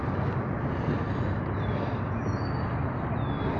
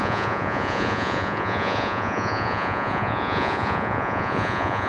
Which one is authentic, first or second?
first